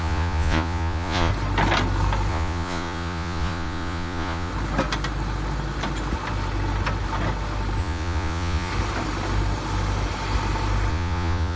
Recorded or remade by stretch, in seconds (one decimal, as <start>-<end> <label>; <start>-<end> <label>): 0.0-1.3 remade; 1.3-2.3 recorded; 2.3-4.5 remade; 4.5-7.8 recorded; 7.8-8.7 remade; 8.7-10.9 recorded; 10.9-11.6 remade